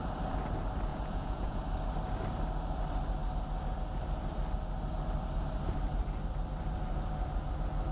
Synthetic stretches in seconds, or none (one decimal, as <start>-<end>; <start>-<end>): 0.9-1.6